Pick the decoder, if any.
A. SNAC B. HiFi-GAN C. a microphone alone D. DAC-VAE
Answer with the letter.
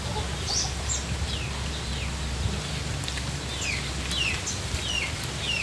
C